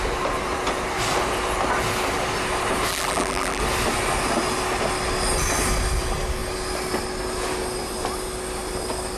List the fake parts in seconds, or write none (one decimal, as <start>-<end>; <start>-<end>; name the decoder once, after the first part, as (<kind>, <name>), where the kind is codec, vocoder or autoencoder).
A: 2.9-3.6 (vocoder, BigVGAN v2)

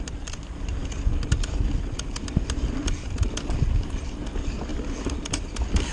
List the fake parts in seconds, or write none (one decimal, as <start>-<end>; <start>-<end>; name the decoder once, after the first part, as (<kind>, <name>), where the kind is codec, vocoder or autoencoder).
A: 0.0-0.8 (vocoder, BigVGAN v2); 4.3-5.9

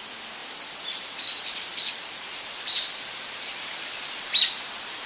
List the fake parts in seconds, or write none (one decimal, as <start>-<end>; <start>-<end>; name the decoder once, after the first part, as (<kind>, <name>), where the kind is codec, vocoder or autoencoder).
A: 0.4-1.9 (vocoder, BigVGAN v2); 2.3-4.5

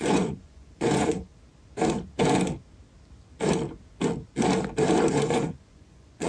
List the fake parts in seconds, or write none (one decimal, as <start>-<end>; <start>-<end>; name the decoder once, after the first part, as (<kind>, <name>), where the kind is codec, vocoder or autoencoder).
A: 0.0-1.3 (vocoder, Vocos); 5.1-6.3

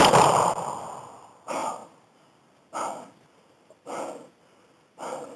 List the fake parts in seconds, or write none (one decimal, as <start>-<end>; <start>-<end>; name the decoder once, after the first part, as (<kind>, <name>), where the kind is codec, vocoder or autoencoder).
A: 1.6-2.2 (vocoder, BigVGAN v2)

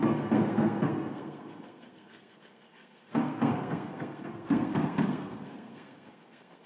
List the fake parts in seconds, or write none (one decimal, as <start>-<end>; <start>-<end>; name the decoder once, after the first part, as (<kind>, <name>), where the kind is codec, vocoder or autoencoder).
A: 0.0-6.7 (codec, SNAC)

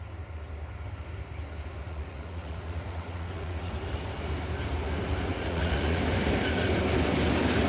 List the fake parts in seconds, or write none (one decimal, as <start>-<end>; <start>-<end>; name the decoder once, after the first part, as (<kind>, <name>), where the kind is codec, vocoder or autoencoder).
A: 1.8-3.7 (vocoder, Vocos); 5.3-6.0